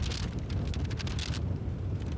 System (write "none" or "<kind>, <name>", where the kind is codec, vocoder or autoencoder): none